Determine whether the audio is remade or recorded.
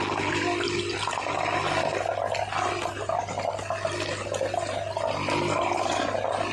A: recorded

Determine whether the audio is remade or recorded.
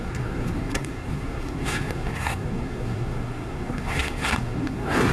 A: remade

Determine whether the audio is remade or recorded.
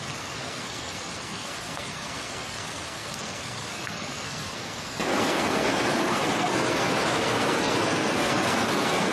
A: remade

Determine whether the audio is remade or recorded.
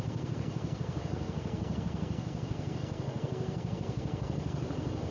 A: remade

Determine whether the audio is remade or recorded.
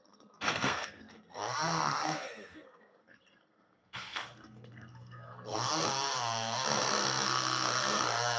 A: remade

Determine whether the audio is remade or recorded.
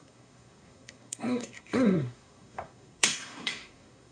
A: remade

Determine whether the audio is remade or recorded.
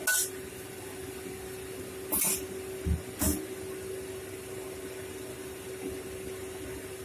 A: recorded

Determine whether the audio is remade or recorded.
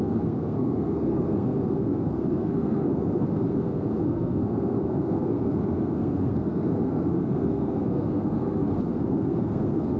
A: remade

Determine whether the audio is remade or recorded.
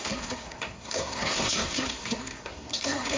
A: remade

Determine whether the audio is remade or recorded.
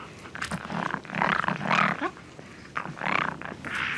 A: recorded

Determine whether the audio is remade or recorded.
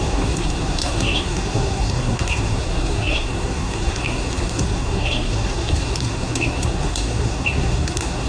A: remade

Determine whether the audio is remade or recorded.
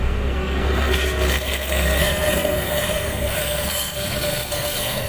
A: remade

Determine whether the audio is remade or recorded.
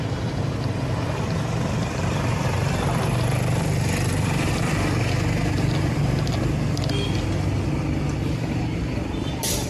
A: recorded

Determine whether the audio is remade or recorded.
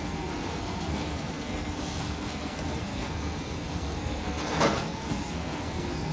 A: remade